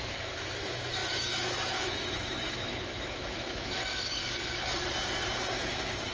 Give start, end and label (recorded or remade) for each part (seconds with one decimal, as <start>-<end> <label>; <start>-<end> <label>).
0.0-4.2 remade; 4.2-5.5 recorded; 5.5-6.1 remade